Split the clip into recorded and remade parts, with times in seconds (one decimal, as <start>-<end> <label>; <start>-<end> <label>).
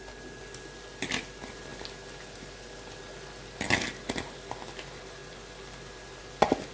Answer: 0.0-6.7 recorded